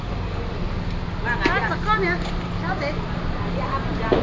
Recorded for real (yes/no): yes